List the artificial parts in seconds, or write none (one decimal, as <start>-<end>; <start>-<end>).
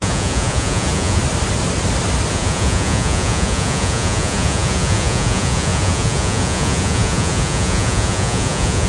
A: 0.0-1.2; 2.3-8.9